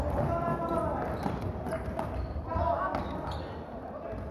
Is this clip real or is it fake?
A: real